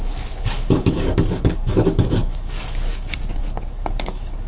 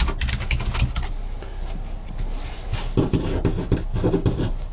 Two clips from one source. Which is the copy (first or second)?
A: first